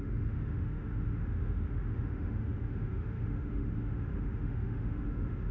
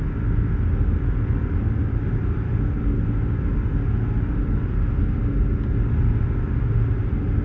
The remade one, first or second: first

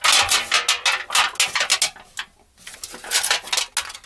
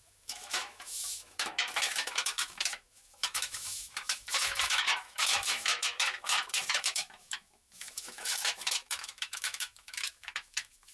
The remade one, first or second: second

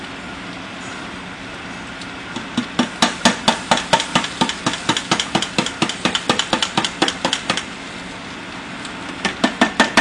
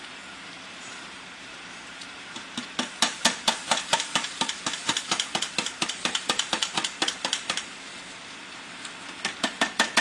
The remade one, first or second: second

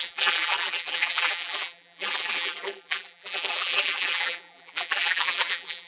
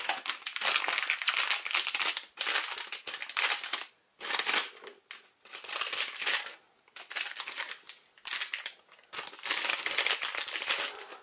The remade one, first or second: first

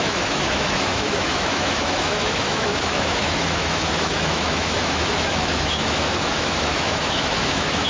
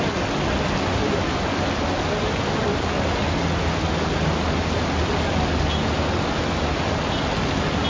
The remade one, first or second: first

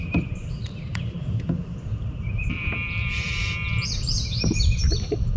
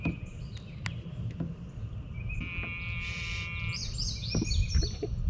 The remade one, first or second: first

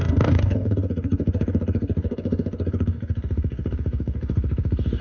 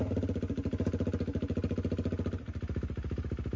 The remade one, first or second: first